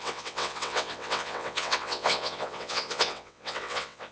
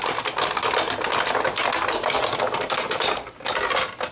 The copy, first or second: first